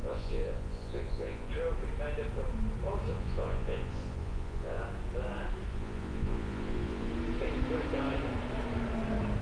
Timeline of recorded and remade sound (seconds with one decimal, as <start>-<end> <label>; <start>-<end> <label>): 0.0-1.5 remade; 1.5-3.1 recorded; 3.1-4.8 remade; 4.8-5.7 recorded; 5.7-7.1 remade; 7.1-9.4 recorded